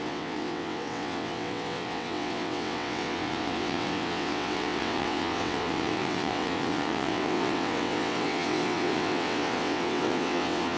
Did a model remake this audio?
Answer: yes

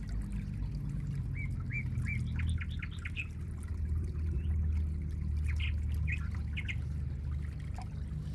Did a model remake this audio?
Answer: no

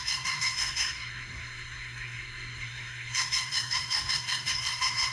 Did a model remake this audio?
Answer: yes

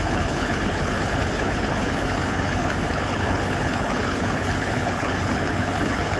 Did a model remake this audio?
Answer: yes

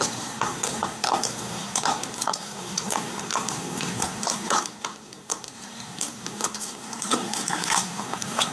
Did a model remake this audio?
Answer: yes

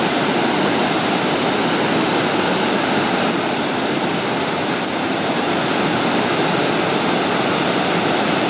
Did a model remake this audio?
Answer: no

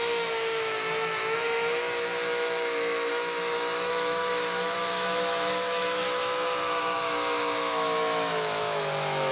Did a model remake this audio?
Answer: yes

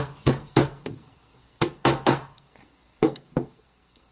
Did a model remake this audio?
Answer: yes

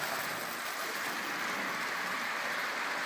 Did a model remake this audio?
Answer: no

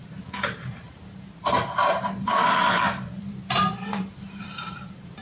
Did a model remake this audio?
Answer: yes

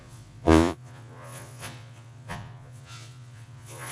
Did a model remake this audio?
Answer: yes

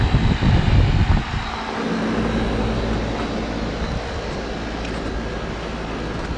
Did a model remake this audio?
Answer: no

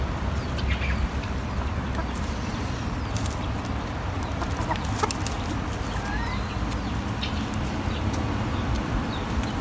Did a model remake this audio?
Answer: no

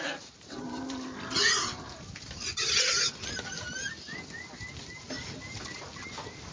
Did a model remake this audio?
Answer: no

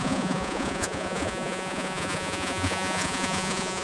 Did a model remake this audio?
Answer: yes